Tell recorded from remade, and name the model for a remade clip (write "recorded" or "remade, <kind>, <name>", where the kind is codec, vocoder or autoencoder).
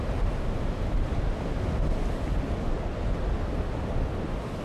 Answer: recorded